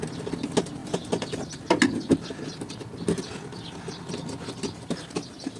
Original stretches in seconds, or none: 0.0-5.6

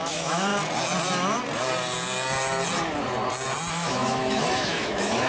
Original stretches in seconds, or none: 0.5-3.7

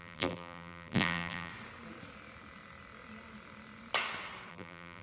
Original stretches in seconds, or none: 1.5-4.5

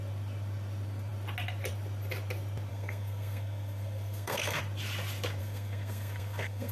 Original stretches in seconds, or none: 0.0-2.7; 4.6-5.4

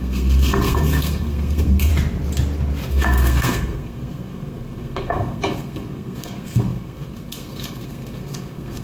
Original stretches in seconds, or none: 1.9-2.9

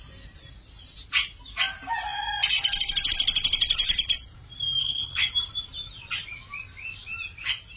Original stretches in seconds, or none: 0.0-4.8; 5.3-7.8

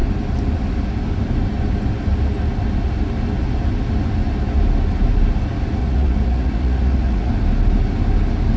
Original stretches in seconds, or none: 0.0-5.8; 7.3-8.6